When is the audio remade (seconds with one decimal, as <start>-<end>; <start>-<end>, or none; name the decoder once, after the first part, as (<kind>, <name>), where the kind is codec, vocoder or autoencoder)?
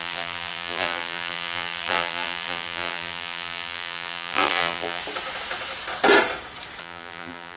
0.0-5.0 (vocoder, BigVGAN v2); 6.8-7.6